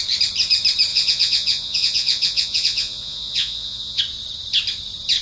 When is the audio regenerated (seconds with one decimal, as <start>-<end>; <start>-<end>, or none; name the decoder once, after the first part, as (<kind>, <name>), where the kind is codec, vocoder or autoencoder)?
0.9-4.0 (vocoder, Vocos)